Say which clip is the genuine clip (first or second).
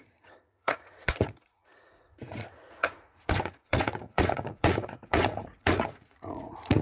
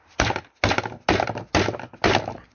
second